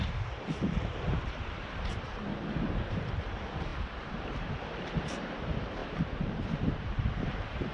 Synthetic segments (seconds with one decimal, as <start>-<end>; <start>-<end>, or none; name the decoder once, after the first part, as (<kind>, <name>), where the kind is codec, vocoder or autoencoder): 0.0-2.3 (vocoder, BigVGAN v2); 2.9-7.7